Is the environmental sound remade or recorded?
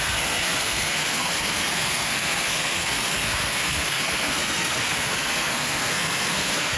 remade